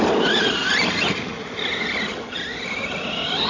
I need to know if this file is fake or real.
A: real